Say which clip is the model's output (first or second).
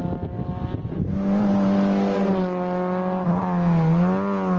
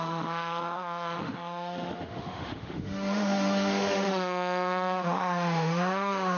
second